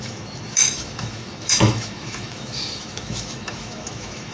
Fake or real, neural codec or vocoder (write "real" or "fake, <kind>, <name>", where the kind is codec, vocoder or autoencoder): fake, autoencoder, DAC-VAE